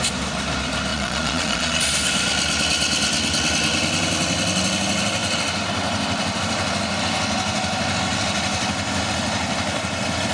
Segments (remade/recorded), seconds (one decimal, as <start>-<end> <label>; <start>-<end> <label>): 0.0-0.9 recorded; 0.9-1.8 remade; 1.8-10.3 recorded